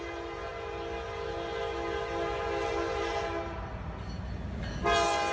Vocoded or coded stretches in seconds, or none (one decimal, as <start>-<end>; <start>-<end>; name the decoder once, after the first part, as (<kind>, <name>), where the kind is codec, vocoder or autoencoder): none